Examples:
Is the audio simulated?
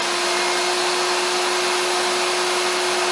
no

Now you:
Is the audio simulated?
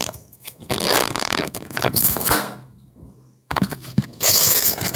yes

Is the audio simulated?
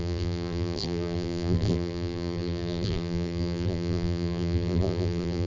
yes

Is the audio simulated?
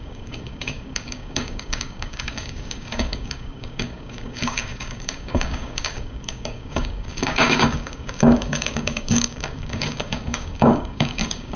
yes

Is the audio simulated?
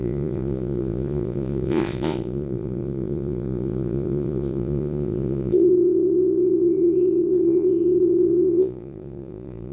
yes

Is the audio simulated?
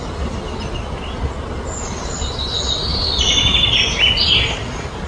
no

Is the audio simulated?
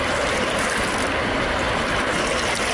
no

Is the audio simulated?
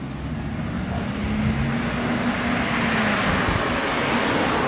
no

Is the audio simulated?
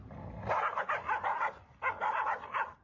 no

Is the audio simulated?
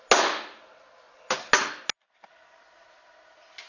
no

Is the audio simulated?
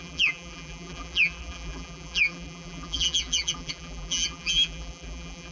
yes